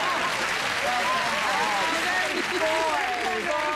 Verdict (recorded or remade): recorded